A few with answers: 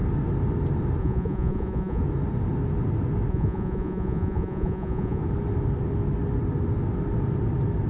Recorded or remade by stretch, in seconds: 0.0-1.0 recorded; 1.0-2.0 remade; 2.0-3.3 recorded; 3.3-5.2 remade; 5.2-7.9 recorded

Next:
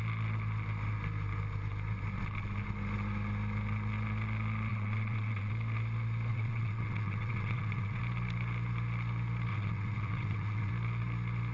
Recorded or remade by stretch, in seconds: 0.0-4.7 recorded; 4.7-5.5 remade; 5.5-6.3 recorded; 6.3-8.0 remade; 8.0-9.5 recorded; 9.5-10.7 remade; 10.7-11.5 recorded

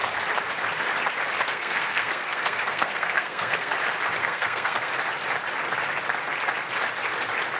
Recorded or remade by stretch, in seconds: 0.0-1.5 recorded; 1.5-3.7 remade; 3.7-4.2 recorded; 4.2-4.9 remade; 4.9-7.6 recorded

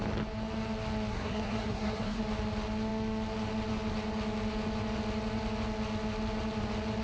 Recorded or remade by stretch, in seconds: 0.0-1.1 recorded; 1.1-2.2 remade; 2.2-7.0 recorded

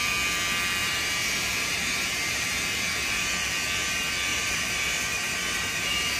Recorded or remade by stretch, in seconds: 0.0-0.8 recorded; 0.8-3.3 remade; 3.3-4.3 recorded; 4.3-6.2 remade